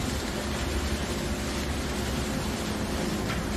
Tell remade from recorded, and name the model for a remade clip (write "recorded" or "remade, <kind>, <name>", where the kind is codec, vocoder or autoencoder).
recorded